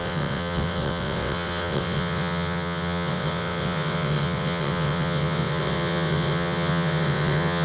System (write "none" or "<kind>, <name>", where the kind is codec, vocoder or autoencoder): vocoder, WaveNeXt